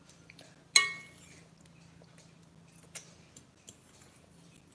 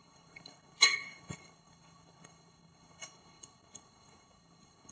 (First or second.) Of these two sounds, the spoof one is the second